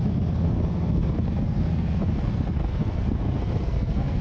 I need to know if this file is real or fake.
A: fake